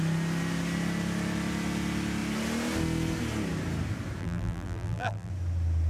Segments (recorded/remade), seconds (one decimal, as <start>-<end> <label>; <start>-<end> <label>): 0.0-4.2 recorded; 4.2-5.3 remade; 5.3-5.9 recorded